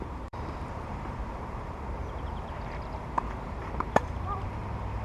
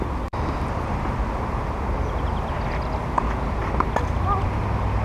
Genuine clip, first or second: second